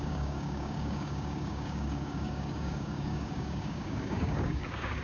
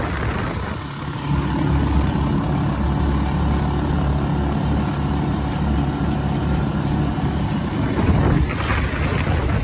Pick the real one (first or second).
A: second